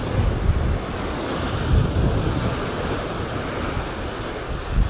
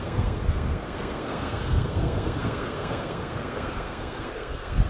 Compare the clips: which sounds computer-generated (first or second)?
second